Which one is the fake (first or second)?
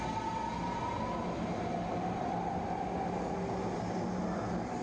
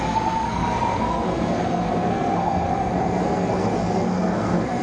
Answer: second